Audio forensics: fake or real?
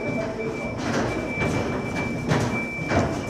real